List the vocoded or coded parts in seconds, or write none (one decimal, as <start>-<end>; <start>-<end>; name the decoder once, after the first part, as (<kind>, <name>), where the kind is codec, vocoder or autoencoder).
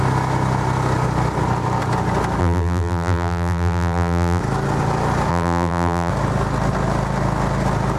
2.4-4.4 (vocoder, BigVGAN v2); 5.3-6.1